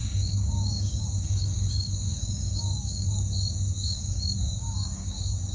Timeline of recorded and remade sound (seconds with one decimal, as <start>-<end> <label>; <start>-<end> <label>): 0.0-5.5 remade